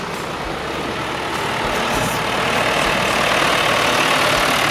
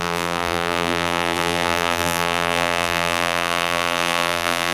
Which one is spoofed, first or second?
second